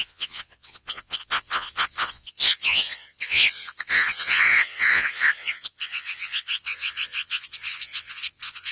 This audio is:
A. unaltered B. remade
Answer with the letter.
B